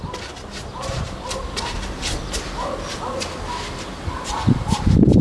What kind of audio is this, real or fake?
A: real